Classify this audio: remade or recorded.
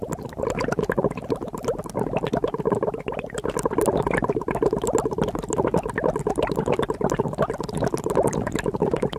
recorded